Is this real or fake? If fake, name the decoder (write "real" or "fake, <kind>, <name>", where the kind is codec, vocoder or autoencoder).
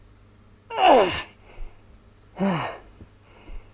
real